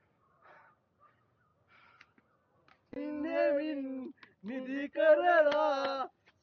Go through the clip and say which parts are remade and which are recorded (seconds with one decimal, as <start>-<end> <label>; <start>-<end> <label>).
0.0-6.4 recorded